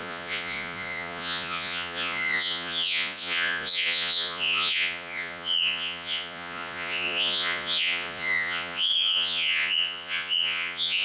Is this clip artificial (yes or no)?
yes